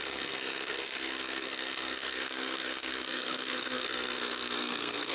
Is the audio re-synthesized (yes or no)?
yes